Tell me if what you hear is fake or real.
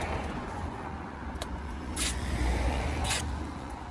fake